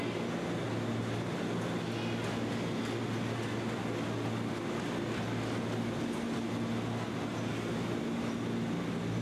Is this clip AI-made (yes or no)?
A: no